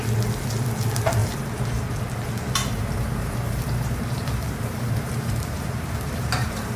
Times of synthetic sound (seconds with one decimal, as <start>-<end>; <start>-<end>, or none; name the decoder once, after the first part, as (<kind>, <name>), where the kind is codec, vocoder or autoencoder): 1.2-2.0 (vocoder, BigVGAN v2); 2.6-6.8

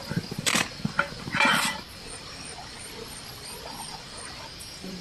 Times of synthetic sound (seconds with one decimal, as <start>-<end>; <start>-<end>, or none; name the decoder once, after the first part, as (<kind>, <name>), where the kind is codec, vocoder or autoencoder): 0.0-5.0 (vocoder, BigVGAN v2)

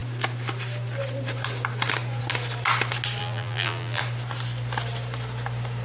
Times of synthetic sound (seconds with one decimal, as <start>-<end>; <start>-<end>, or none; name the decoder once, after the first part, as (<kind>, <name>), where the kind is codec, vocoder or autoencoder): 3.2-4.0 (vocoder, BigVGAN v2)